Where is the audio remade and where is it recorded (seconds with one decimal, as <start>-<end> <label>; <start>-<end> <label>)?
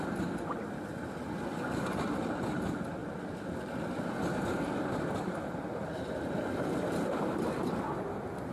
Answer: 0.0-8.5 recorded